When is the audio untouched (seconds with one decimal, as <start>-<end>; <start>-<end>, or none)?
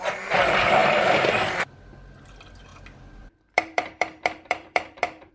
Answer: 0.0-0.8; 1.9-2.7